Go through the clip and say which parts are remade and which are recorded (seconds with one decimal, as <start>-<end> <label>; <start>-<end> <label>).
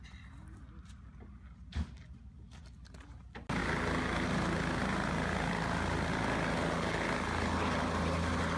0.0-8.6 recorded